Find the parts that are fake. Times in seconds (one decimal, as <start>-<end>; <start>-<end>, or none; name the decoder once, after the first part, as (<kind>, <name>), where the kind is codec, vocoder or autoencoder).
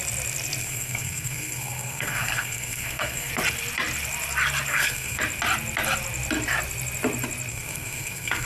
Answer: 0.6-3.3 (codec, SNAC); 4.7-5.2; 7.5-8.5